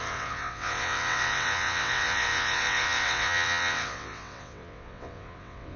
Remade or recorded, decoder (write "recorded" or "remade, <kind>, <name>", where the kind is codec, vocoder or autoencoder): remade, vocoder, WaveNeXt